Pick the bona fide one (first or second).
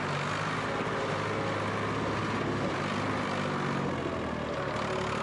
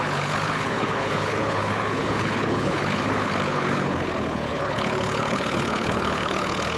first